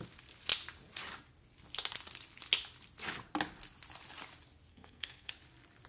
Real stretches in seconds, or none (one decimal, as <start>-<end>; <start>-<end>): 0.0-4.7; 5.3-5.9